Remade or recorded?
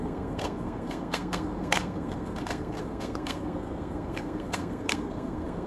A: remade